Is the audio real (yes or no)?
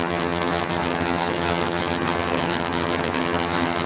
no